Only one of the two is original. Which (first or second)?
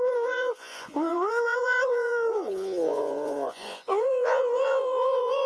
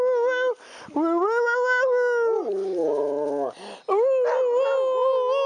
second